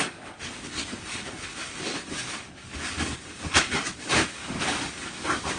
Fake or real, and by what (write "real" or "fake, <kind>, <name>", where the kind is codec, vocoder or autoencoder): fake, codec, DAC